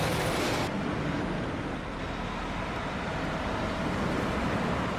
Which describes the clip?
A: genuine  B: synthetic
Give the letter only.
A